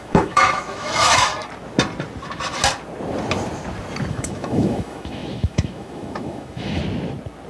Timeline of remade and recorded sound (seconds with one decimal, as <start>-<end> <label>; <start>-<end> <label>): 0.0-1.3 remade; 1.3-4.1 recorded; 4.1-6.8 remade; 6.8-7.5 recorded